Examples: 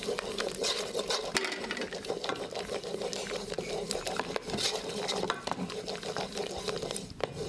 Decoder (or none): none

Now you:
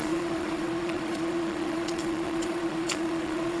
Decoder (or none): vocoder, Vocos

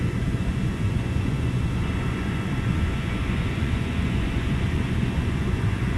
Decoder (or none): vocoder, Vocos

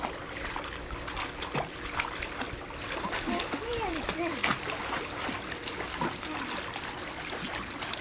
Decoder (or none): none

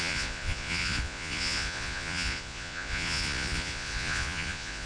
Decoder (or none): vocoder, Vocos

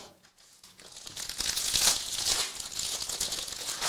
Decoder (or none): vocoder, Vocos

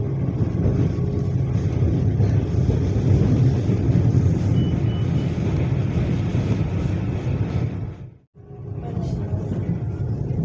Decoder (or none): none